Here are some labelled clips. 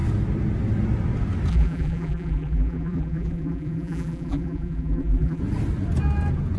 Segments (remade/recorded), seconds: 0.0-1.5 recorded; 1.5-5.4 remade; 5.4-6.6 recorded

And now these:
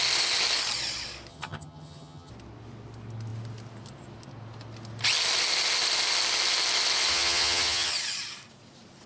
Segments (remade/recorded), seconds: 0.0-1.3 recorded; 1.3-2.3 remade; 2.3-7.1 recorded; 7.1-7.9 remade; 7.9-9.1 recorded

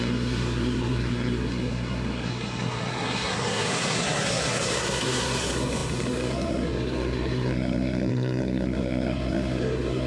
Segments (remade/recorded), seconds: 0.0-10.1 remade

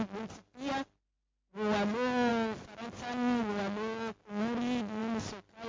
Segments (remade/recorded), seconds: 0.0-5.7 recorded

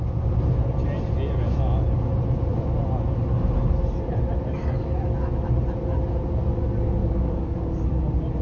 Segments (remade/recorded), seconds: 0.0-7.0 recorded; 7.0-8.0 remade; 8.0-8.4 recorded

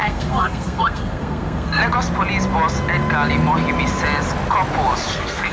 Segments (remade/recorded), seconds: 0.0-1.8 remade; 1.8-5.1 recorded; 5.1-5.5 remade